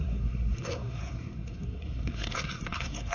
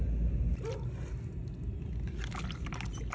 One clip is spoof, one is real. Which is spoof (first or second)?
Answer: first